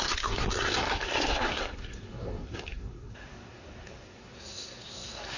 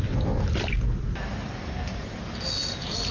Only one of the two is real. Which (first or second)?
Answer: second